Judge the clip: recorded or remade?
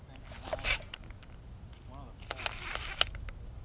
recorded